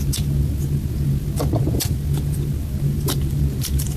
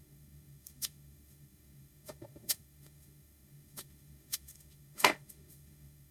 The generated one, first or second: second